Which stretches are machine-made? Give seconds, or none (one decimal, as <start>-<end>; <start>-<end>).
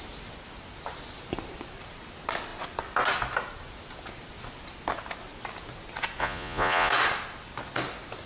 6.2-6.9